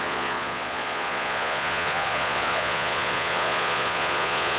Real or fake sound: fake